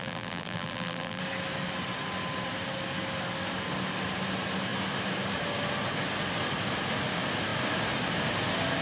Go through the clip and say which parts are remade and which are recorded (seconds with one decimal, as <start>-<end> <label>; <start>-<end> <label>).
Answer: 0.0-1.2 remade; 1.2-8.8 recorded